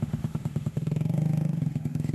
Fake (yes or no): yes